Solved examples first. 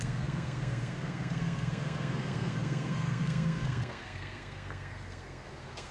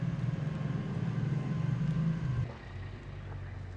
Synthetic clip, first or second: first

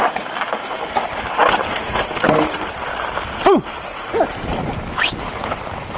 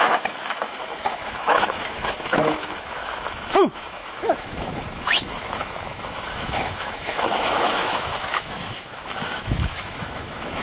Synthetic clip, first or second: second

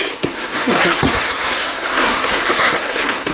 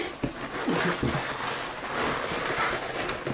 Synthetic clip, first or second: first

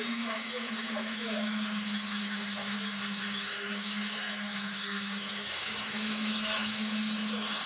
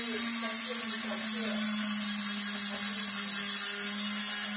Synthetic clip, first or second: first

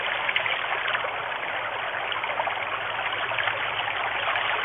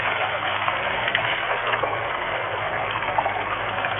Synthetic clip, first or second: second